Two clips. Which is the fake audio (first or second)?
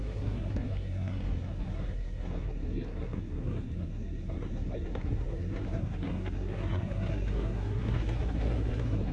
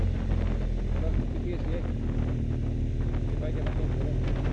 first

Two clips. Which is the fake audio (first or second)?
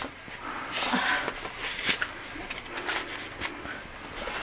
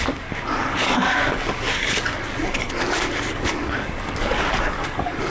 second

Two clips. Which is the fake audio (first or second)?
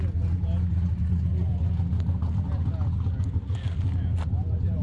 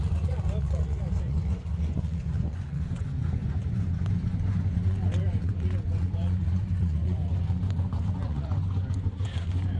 second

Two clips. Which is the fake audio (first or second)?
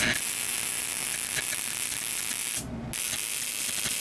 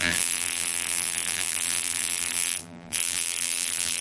second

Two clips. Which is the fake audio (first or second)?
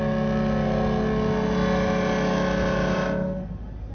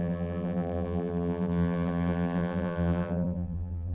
second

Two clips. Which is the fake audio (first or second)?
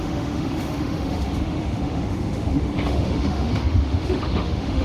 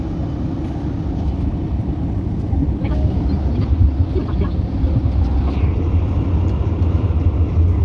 first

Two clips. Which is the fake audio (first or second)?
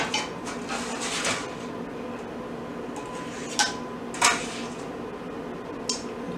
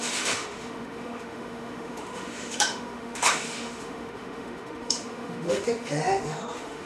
second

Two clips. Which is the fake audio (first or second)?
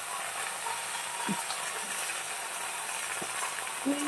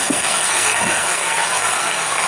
second